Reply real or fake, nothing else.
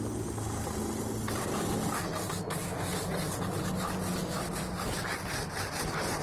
real